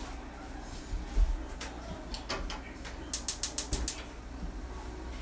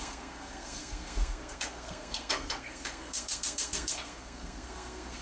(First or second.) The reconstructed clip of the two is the second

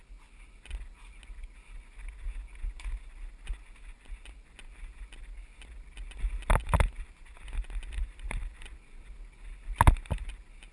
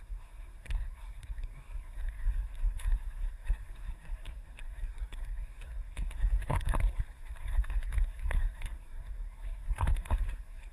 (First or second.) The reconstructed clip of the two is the second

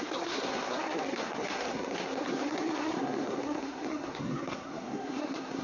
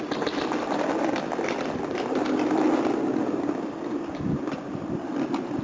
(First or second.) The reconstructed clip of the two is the first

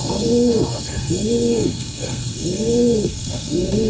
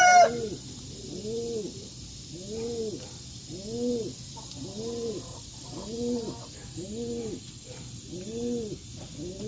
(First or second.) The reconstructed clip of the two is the first